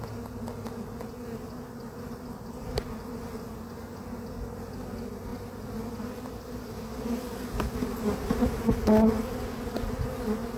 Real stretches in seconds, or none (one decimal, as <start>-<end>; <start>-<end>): 0.0-10.6